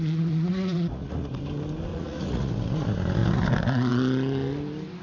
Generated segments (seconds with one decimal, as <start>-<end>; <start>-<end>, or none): 0.5-1.3; 1.9-2.5